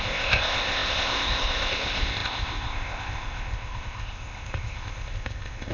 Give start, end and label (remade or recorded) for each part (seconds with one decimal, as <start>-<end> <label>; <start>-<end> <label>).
0.0-5.7 remade